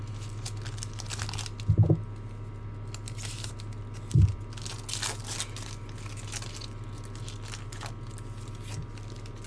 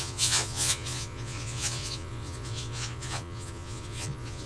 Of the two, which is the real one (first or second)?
first